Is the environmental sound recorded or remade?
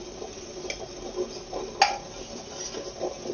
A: recorded